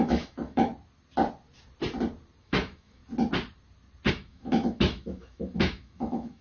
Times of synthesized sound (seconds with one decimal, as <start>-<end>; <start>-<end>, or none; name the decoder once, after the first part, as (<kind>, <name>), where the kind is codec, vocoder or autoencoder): 0.0-0.7 (autoencoder, DAC-VAE); 2.4-3.0; 4.1-6.4